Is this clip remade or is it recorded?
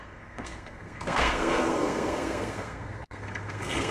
remade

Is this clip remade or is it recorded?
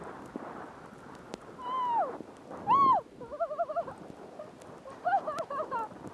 recorded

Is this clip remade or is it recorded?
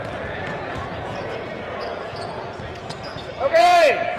remade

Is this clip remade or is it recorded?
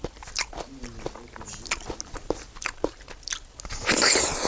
recorded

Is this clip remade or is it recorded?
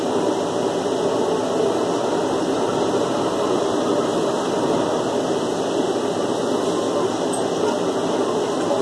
recorded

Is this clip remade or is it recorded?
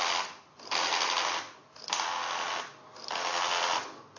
recorded